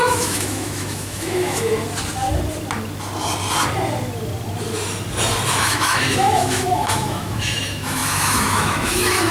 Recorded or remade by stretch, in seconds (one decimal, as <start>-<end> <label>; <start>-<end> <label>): 0.0-1.7 remade; 1.7-5.5 recorded; 5.5-9.3 remade